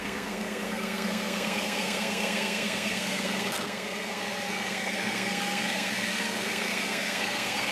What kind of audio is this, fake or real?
fake